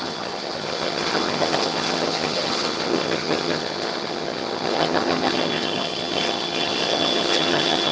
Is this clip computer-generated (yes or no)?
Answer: yes